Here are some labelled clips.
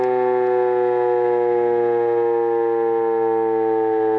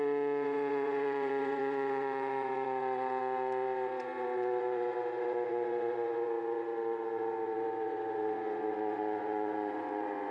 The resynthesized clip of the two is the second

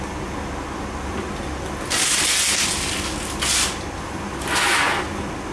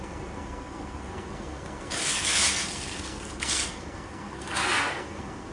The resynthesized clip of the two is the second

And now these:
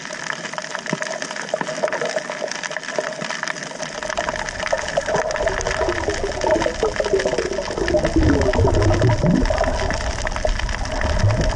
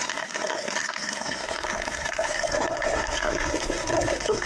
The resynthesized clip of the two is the second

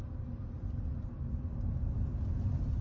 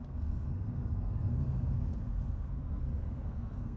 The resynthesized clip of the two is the second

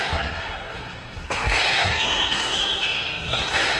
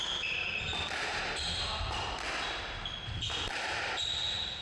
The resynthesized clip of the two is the first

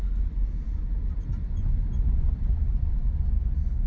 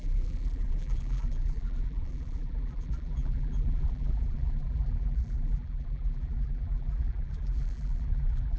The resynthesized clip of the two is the second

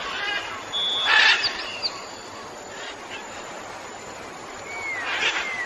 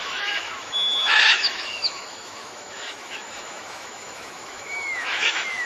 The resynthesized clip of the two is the second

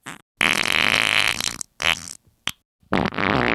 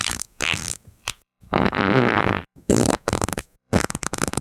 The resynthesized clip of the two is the second